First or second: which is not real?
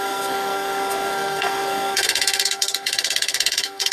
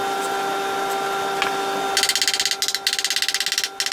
first